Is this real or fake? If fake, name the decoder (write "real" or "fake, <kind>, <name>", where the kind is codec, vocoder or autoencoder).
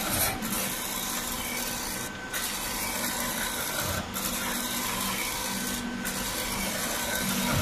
real